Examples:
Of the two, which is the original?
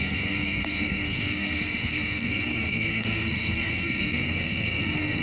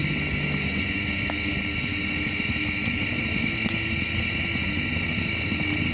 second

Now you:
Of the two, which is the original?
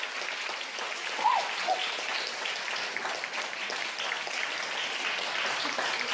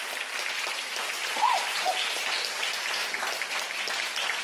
first